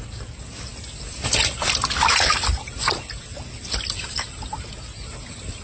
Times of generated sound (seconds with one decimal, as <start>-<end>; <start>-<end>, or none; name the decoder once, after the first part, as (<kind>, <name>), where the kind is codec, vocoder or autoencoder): none